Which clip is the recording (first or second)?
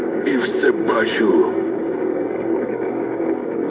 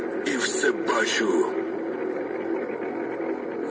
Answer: second